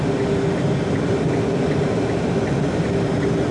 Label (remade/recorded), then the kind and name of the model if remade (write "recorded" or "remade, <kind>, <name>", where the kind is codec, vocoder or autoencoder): recorded